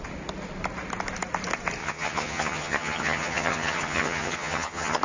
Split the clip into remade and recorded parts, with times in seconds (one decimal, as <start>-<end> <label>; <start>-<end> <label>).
0.0-1.8 recorded; 1.8-5.0 remade